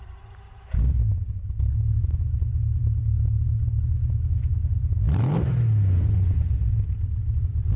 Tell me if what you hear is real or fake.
real